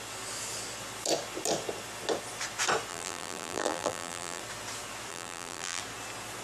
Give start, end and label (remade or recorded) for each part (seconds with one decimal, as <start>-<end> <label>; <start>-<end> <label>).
0.0-2.9 recorded; 2.9-4.4 remade; 4.4-5.1 recorded; 5.1-5.8 remade; 5.8-6.4 recorded